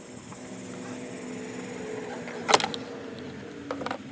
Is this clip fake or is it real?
real